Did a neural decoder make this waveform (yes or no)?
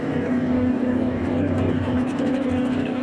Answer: yes